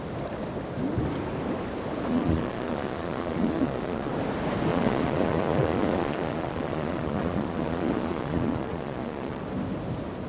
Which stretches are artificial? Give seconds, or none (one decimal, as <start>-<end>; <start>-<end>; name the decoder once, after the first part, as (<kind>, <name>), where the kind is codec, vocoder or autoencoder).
2.1-4.1 (vocoder, Vocos); 4.7-9.4